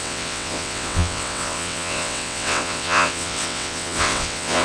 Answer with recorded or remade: remade